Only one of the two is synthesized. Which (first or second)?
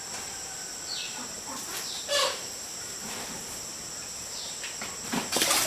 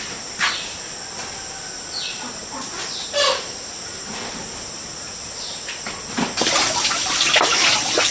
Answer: first